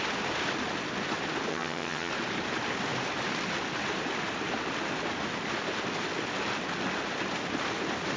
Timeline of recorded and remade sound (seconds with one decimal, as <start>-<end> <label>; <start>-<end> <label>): 0.0-1.5 recorded; 1.5-2.1 remade; 2.1-8.2 recorded